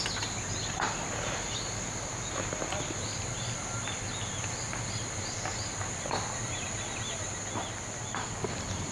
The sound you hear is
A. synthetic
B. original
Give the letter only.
B